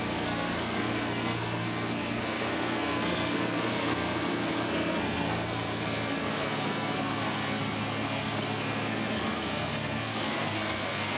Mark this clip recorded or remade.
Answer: remade